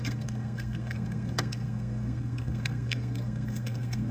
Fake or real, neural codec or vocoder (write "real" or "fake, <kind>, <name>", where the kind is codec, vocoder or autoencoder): fake, codec, SNAC